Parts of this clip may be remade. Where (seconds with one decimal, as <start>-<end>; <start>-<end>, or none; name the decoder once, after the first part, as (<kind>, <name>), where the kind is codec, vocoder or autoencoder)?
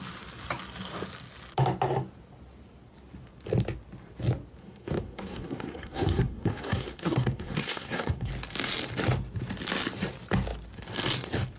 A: 4.6-8.3 (codec, SNAC)